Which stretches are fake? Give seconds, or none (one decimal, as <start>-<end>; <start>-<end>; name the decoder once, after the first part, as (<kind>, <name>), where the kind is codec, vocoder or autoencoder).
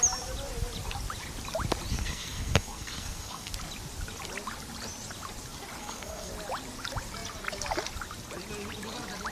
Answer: 1.9-3.5 (codec, SNAC); 5.8-6.3